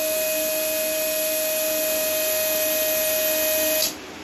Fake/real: real